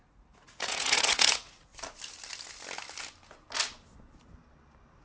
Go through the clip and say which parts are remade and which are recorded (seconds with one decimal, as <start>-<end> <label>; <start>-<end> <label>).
0.0-1.7 remade; 1.7-5.0 recorded